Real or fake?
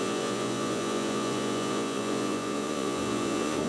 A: fake